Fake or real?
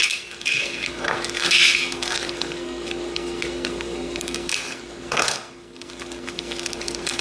fake